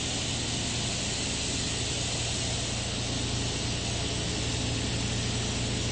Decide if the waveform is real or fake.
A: real